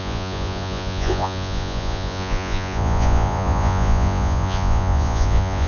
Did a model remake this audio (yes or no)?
yes